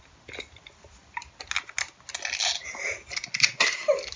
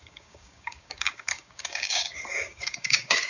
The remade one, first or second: second